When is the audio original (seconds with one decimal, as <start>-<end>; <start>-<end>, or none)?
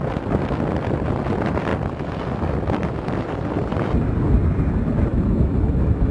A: 0.0-5.1